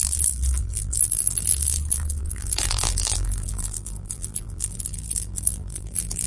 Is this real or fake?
fake